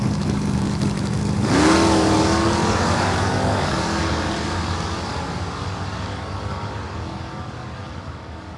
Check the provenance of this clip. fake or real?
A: fake